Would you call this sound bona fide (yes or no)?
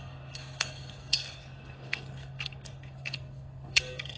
no